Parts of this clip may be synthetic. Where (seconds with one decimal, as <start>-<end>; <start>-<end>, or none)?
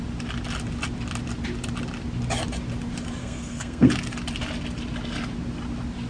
3.2-3.9